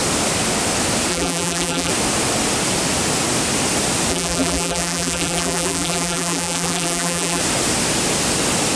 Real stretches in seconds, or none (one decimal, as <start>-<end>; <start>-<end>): 0.0-1.1; 1.9-4.1; 7.4-8.8